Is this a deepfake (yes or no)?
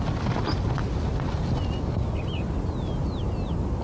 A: no